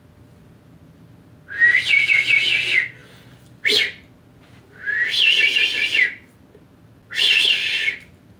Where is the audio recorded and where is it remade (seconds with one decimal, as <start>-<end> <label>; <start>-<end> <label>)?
0.0-8.4 recorded